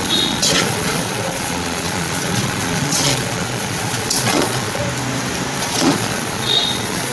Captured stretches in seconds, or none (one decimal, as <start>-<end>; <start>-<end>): 4.8-5.6